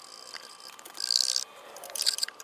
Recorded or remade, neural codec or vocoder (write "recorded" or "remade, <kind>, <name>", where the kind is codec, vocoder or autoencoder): recorded